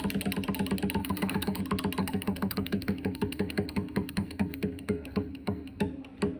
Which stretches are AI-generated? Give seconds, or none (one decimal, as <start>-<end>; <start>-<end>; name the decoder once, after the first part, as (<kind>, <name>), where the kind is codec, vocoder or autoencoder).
1.0-1.6 (codec, SNAC); 2.0-5.8